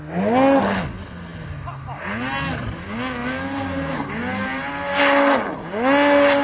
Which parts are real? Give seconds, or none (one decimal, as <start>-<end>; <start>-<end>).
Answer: 0.0-6.4